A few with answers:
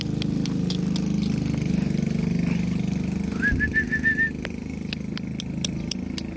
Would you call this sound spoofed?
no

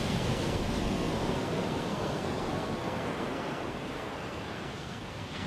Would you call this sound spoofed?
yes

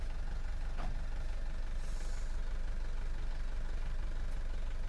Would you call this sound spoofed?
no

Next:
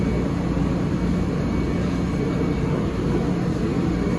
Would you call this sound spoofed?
no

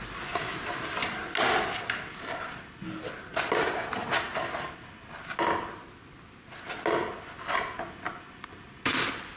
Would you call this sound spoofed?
no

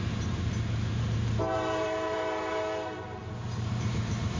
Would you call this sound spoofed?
yes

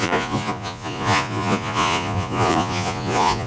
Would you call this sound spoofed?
yes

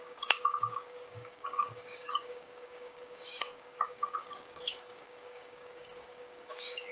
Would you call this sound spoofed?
yes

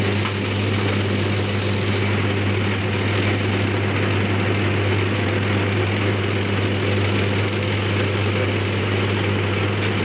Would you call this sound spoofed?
no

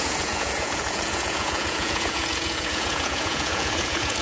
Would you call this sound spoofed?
yes